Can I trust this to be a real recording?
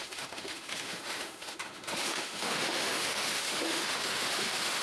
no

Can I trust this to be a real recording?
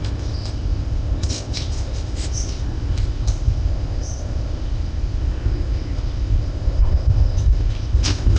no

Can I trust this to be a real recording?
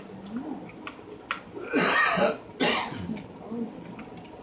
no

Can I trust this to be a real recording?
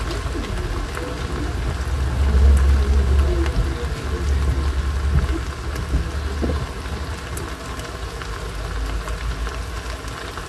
yes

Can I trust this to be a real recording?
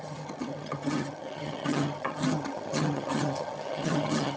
no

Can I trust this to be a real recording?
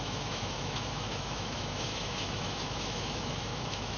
no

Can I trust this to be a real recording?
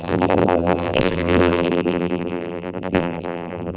no